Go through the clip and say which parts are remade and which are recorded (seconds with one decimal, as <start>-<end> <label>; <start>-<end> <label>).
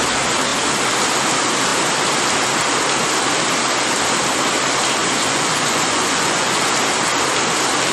0.0-5.0 recorded; 5.0-6.7 remade; 6.7-7.9 recorded